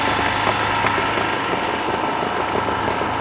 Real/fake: real